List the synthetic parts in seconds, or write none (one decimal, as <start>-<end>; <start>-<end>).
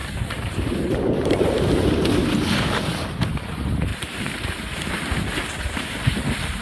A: 0.0-2.1; 3.9-4.9